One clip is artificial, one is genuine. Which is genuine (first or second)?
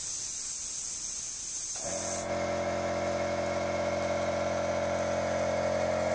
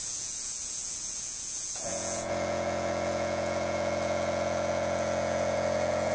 first